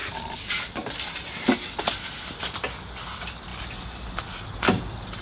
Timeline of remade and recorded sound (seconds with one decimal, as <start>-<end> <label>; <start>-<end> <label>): 0.0-5.2 recorded